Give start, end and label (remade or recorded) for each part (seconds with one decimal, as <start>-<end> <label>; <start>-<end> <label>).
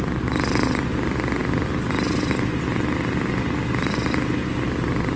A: 0.0-5.2 recorded